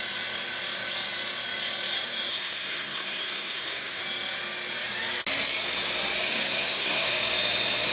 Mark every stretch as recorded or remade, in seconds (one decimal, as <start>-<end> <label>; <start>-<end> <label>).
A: 0.0-2.3 recorded; 2.3-4.0 remade; 4.0-6.3 recorded; 6.3-7.1 remade; 7.1-7.9 recorded